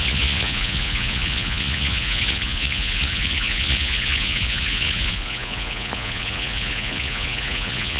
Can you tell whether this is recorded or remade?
remade